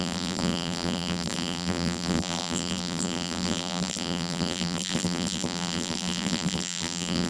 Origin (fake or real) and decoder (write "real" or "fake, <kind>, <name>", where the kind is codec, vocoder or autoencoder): fake, vocoder, BigVGAN v2